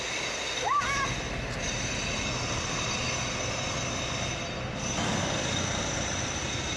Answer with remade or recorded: recorded